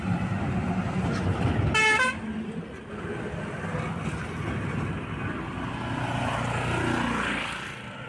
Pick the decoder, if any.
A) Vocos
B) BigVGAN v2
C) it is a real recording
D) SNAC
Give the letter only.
C